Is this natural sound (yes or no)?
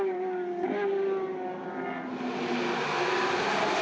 yes